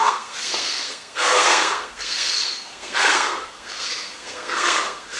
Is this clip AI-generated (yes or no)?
yes